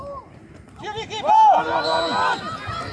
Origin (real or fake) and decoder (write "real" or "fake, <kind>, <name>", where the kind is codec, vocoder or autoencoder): real